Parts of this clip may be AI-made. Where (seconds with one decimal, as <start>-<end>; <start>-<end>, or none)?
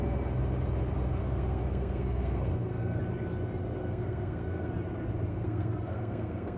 1.2-3.0; 3.8-4.7; 5.3-6.6